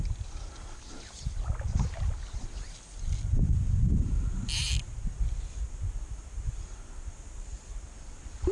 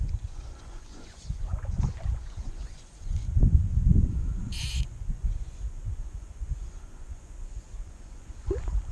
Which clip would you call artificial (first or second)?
second